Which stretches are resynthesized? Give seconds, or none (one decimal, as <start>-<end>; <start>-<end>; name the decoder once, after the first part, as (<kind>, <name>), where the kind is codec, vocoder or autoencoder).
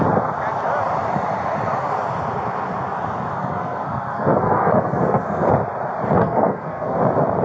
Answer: 3.4-5.5 (codec, SNAC); 6.2-7.0